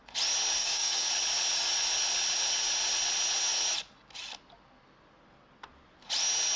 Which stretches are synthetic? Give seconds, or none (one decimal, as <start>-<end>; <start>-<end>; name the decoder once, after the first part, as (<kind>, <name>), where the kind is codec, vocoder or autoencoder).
0.6-1.1 (codec, DAC)